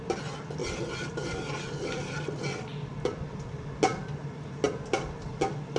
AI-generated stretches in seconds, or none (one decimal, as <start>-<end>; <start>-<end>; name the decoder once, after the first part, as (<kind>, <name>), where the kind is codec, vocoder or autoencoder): none